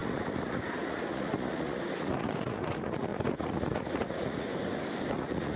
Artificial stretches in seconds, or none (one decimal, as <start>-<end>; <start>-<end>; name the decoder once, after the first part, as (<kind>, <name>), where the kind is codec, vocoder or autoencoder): 0.0-4.5 (vocoder, Vocos); 5.1-5.6